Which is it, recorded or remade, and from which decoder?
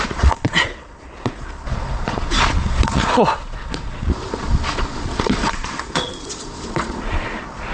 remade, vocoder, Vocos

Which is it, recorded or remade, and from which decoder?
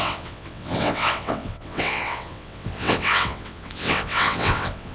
remade, vocoder, WaveNeXt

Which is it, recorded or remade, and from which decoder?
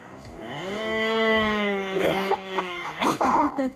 remade, codec, DAC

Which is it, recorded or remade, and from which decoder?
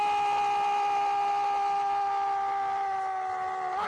recorded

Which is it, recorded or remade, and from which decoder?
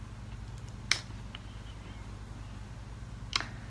recorded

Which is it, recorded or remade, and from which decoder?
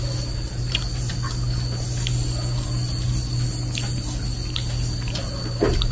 recorded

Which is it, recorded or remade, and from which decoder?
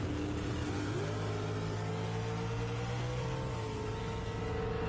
recorded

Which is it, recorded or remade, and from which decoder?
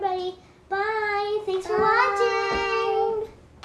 recorded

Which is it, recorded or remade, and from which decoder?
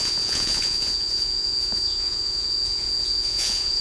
remade, vocoder, Vocos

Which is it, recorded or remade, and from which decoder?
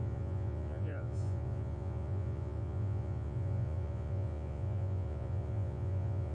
remade, vocoder, Vocos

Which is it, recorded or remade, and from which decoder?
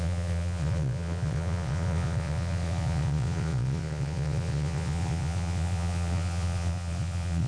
remade, vocoder, Vocos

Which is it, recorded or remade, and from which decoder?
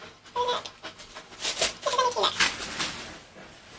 recorded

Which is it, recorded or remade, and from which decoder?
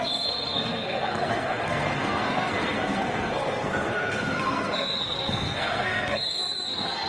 remade, codec, SNAC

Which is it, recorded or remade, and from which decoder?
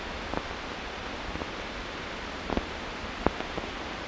recorded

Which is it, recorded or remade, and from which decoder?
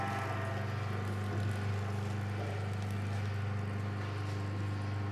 recorded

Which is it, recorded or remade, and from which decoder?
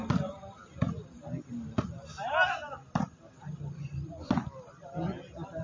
recorded